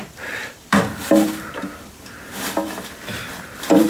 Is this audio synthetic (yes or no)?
yes